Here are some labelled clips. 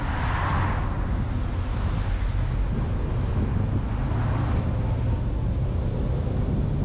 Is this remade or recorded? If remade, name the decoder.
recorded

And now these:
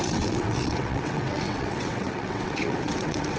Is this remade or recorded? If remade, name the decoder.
remade, vocoder, WaveNeXt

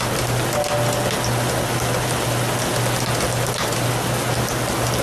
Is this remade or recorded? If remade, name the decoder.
recorded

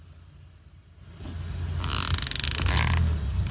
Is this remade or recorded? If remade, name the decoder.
recorded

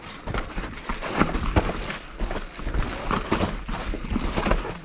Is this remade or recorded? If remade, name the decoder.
recorded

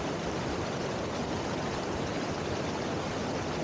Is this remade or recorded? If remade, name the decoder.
recorded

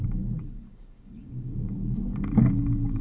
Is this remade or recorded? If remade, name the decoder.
remade, codec, DAC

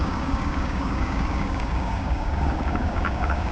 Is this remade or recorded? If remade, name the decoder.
remade, codec, DAC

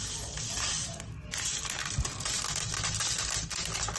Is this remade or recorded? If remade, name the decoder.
recorded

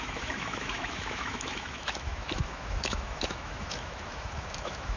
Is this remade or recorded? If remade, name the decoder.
remade, autoencoder, DAC-VAE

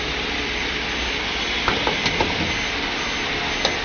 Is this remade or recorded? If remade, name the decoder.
recorded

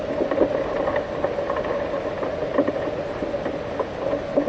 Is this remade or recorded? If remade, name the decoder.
recorded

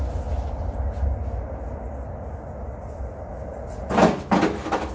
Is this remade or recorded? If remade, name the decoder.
recorded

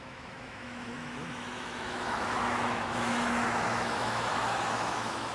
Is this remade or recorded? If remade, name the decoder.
remade, autoencoder, DAC-VAE